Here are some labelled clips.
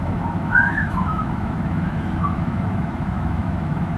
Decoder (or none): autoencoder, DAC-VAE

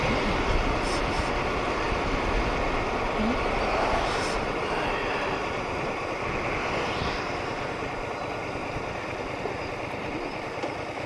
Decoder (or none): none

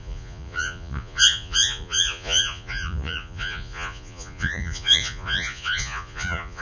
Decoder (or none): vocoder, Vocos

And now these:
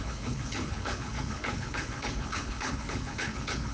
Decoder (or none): codec, HILCodec